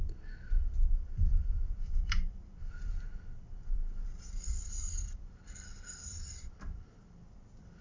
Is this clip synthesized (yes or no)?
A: yes